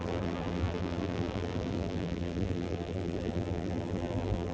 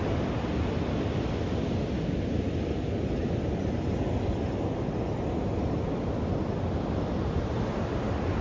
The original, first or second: second